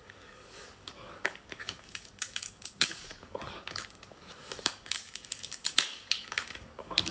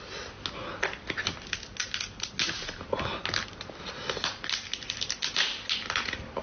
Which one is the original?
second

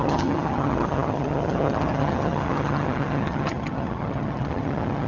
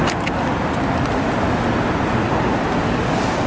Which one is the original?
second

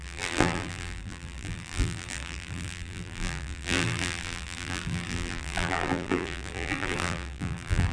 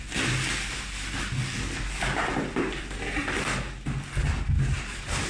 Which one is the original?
second